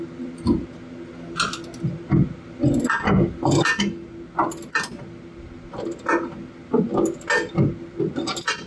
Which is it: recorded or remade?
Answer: recorded